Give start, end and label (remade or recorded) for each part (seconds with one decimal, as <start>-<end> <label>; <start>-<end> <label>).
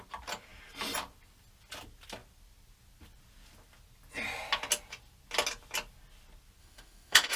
0.0-6.6 recorded; 6.6-7.4 remade